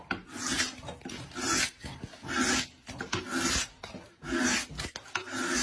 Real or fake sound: real